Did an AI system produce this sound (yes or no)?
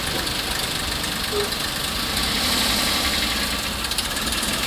no